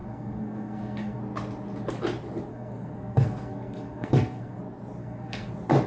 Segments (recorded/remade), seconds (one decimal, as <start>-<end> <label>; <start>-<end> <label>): 0.0-1.2 remade; 1.2-2.5 recorded; 2.5-4.6 remade; 4.6-5.0 recorded; 5.0-5.5 remade; 5.5-5.9 recorded